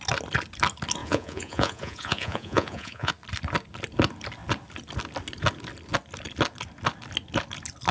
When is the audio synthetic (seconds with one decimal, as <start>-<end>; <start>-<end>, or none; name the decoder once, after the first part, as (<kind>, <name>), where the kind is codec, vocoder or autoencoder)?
1.0-3.1 (vocoder, Vocos)